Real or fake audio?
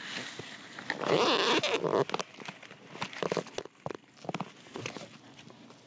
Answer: real